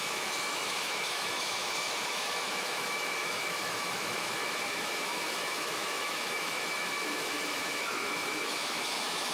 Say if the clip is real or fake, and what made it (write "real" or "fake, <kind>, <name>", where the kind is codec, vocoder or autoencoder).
fake, autoencoder, DAC-VAE